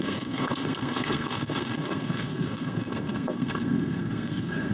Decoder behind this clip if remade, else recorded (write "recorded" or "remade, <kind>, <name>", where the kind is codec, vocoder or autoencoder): remade, codec, SNAC